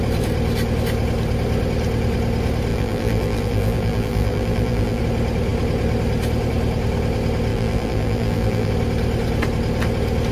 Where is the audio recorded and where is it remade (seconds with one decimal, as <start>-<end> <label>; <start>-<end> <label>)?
0.0-2.7 recorded; 2.7-5.0 remade; 5.0-7.5 recorded; 7.5-8.7 remade; 8.7-10.3 recorded